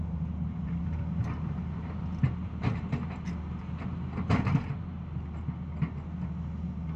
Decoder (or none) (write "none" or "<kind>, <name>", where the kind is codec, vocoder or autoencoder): none